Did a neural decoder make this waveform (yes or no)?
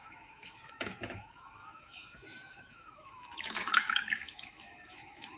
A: yes